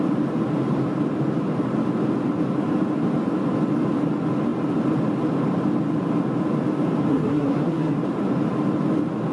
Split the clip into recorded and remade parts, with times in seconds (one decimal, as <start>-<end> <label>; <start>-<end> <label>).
0.0-7.1 recorded; 7.1-8.0 remade; 8.0-9.3 recorded